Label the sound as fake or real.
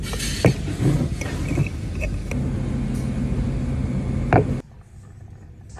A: real